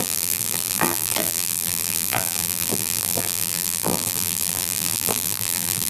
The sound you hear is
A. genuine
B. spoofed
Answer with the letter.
B